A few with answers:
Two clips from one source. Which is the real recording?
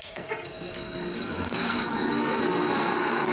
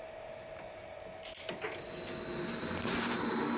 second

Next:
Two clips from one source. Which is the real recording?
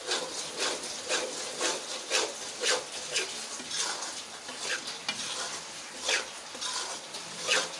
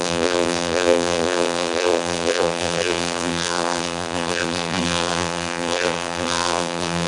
first